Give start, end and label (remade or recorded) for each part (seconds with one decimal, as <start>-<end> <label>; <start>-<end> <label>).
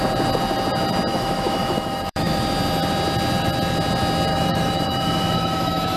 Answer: 0.0-1.1 recorded; 1.1-2.4 remade; 2.4-4.3 recorded; 4.3-6.0 remade